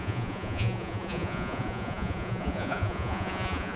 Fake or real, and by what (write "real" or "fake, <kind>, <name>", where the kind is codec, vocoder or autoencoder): fake, vocoder, Vocos